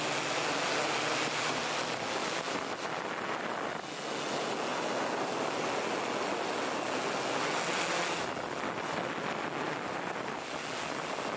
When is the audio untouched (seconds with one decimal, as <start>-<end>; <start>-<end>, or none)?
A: 0.0-11.4